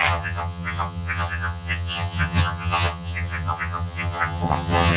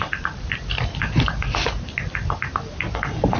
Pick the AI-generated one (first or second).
first